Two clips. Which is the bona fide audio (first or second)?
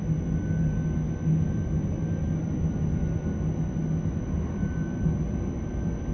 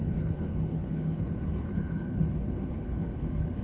first